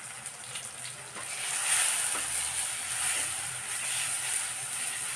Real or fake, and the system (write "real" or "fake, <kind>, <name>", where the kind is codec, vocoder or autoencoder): real